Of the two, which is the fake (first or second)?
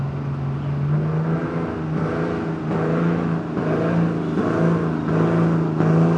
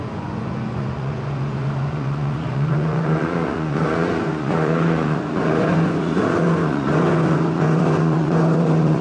second